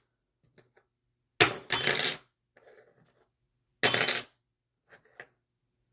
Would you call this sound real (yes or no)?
yes